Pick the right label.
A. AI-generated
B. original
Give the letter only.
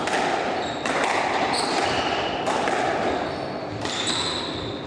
B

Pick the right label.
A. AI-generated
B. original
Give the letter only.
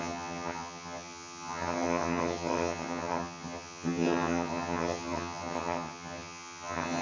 A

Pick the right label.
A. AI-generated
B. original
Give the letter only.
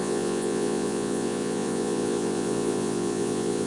A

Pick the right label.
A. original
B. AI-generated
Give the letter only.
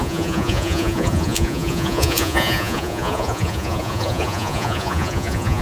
B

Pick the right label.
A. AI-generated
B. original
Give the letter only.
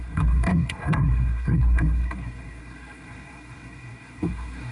A